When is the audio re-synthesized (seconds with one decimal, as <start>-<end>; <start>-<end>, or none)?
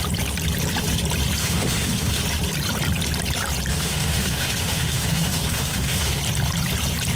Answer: 1.4-2.2; 3.7-6.2